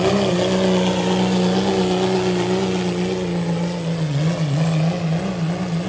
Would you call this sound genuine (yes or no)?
yes